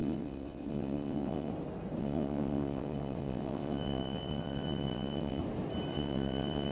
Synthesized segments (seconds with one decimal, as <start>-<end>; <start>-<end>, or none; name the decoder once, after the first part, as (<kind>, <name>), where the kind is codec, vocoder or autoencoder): 0.0-1.5 (vocoder, WaveNeXt); 2.0-5.4; 5.9-6.7